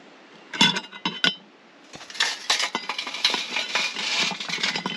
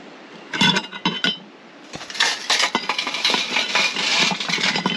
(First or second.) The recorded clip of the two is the first